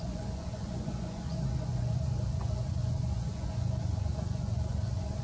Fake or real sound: fake